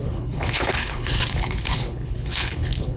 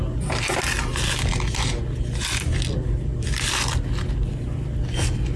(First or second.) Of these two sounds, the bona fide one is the second